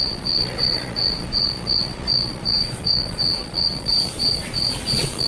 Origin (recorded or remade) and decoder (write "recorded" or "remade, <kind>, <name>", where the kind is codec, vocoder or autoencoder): remade, vocoder, Vocos